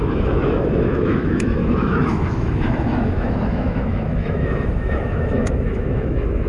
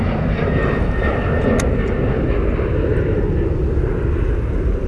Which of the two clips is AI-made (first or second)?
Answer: first